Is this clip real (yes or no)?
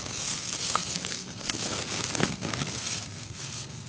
no